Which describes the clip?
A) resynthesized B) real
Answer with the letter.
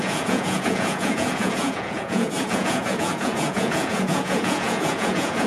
A